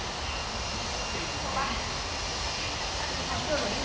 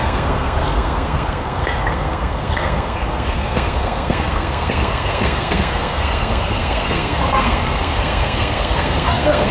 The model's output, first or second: second